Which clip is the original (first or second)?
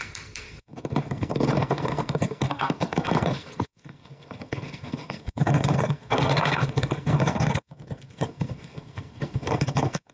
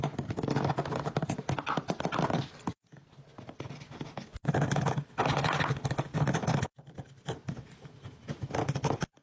second